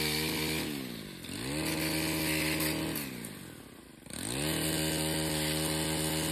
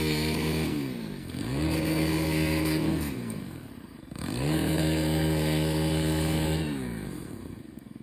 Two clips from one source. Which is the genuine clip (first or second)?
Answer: first